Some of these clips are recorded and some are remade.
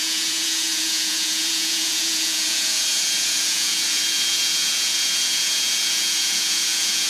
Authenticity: remade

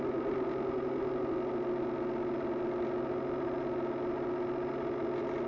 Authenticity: recorded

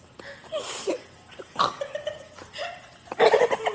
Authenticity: recorded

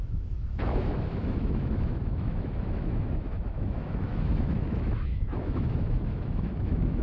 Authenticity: remade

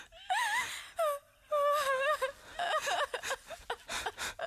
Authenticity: recorded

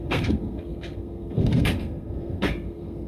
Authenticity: remade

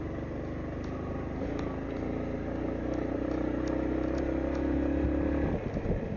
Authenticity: recorded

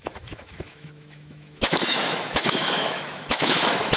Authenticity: remade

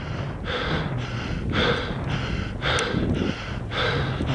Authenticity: recorded